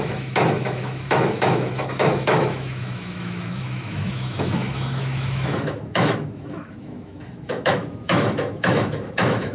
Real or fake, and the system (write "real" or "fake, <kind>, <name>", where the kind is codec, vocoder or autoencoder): fake, autoencoder, DAC-VAE